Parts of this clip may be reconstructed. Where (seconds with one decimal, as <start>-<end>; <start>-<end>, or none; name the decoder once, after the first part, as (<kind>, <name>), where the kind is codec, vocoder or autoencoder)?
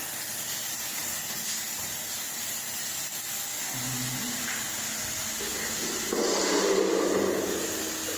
none